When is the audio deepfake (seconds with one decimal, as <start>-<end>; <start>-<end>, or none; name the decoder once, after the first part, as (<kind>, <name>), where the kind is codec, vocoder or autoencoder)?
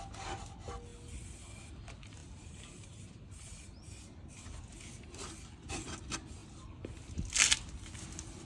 2.2-3.8 (vocoder, BigVGAN v2)